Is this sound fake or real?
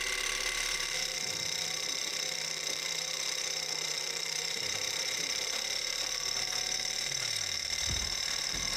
fake